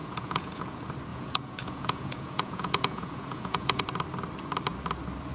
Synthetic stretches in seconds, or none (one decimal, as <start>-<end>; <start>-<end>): 0.0-0.6; 1.1-3.8